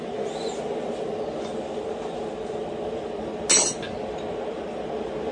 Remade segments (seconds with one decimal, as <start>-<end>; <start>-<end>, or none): none